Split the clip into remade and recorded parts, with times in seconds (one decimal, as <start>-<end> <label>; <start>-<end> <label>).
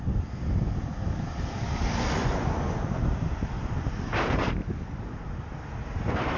0.0-2.2 recorded; 2.2-2.8 remade; 2.8-6.4 recorded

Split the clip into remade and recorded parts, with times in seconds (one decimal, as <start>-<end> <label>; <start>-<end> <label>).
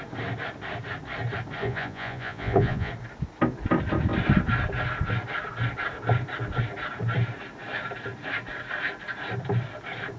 0.0-1.6 recorded; 1.6-2.9 remade; 2.9-10.2 recorded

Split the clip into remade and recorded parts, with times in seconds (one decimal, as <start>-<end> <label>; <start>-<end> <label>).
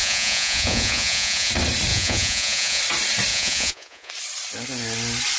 0.0-1.5 remade; 1.5-1.9 recorded; 1.9-2.8 remade; 2.8-3.3 recorded; 3.3-4.1 remade; 4.1-5.4 recorded